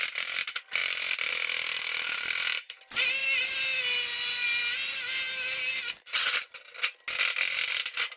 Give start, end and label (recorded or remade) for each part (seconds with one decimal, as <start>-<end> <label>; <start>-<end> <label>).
0.0-8.2 recorded